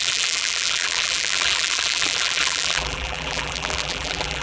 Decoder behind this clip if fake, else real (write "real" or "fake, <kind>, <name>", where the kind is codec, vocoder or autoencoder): fake, vocoder, BigVGAN v2